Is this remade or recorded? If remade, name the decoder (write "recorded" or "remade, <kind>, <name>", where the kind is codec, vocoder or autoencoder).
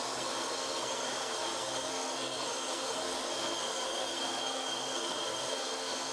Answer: remade, codec, SNAC